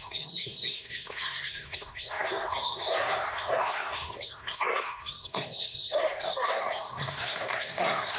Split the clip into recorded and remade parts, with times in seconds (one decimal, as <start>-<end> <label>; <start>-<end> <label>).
0.0-8.2 remade